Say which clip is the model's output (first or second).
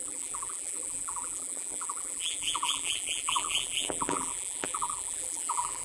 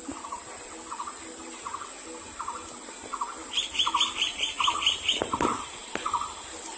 first